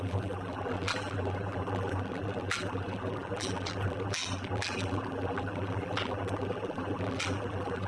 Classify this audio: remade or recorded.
remade